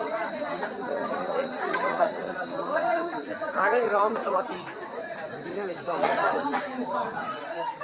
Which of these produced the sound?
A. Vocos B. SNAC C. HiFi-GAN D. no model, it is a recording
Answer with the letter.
A